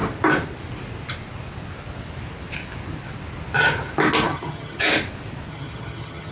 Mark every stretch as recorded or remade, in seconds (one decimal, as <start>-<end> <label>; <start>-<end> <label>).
0.0-4.3 recorded; 4.3-4.8 remade; 4.8-5.5 recorded; 5.5-6.3 remade